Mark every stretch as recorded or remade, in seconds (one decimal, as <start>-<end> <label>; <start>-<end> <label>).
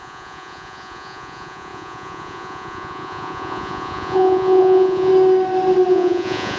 0.0-5.1 remade; 5.1-5.9 recorded; 5.9-6.6 remade